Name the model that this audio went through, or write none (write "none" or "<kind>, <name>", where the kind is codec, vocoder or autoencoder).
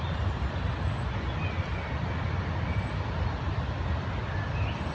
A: none